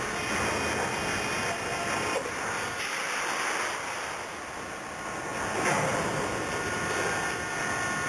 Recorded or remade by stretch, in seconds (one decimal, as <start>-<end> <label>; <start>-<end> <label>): 0.0-8.1 recorded